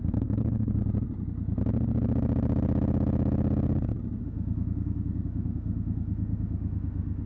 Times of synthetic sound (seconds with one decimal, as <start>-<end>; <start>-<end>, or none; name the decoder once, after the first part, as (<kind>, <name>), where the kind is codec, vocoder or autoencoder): 0.0-0.8 (autoencoder, DAC-VAE); 4.2-7.3